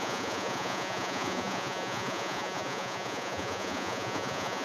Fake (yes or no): yes